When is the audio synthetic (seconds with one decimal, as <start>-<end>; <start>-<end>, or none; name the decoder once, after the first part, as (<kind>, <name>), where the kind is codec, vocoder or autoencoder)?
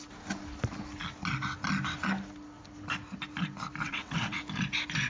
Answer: 3.8-4.4 (vocoder, WaveNeXt)